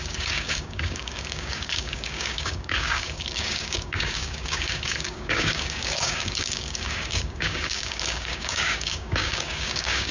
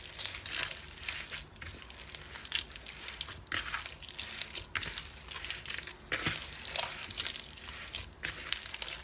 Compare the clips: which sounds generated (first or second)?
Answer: first